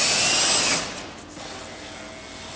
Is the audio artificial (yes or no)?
no